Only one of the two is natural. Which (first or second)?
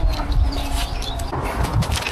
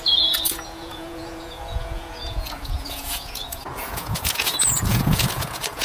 first